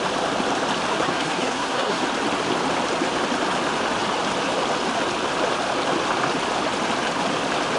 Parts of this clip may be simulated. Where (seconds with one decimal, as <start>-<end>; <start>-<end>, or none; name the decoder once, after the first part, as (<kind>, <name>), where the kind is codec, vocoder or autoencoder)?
0.9-2.0 (codec, SNAC)